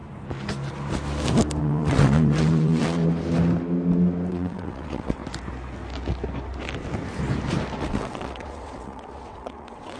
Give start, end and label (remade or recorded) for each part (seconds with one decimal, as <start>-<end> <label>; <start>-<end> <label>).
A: 0.0-1.6 recorded; 1.6-3.0 remade; 3.0-4.3 recorded; 4.3-5.2 remade; 5.2-7.8 recorded; 7.8-10.0 remade